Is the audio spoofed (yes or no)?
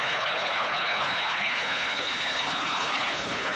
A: yes